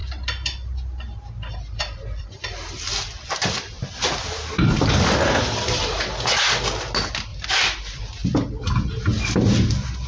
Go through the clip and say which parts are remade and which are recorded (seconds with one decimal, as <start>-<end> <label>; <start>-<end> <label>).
0.0-4.1 remade; 4.1-7.3 recorded; 7.3-8.0 remade; 8.0-10.1 recorded